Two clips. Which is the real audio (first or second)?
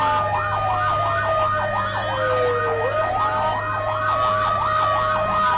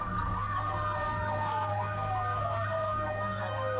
first